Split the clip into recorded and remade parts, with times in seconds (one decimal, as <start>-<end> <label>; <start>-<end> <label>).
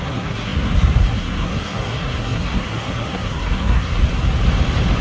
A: 0.0-4.0 remade; 4.0-5.0 recorded